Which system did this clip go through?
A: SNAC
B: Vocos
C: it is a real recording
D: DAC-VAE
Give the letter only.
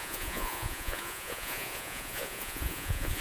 B